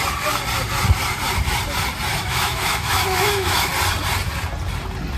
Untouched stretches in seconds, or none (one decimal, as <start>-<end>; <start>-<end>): 0.0-2.1; 3.7-5.2